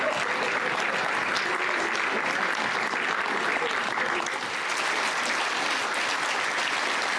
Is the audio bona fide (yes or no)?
yes